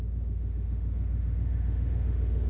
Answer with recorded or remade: remade